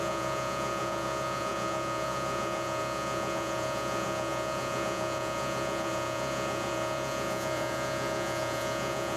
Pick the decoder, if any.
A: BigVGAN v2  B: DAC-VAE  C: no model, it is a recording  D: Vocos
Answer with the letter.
D